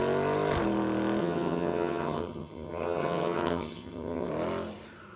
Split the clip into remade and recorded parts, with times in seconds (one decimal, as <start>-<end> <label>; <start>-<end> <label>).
0.0-1.2 recorded; 1.2-4.3 remade; 4.3-5.2 recorded